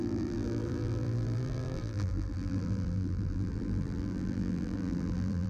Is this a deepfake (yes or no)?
yes